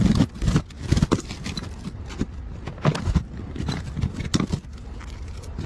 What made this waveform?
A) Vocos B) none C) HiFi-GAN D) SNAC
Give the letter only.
B